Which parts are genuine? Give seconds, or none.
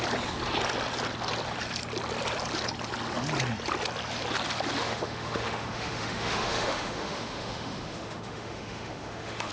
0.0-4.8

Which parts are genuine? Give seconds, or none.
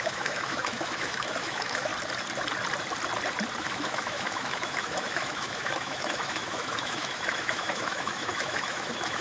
1.9-3.6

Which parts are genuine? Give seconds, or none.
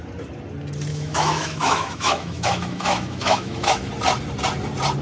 0.0-0.9; 3.9-5.0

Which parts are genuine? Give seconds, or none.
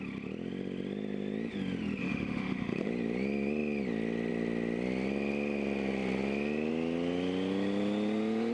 0.0-2.0; 2.9-8.5